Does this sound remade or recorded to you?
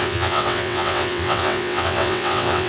remade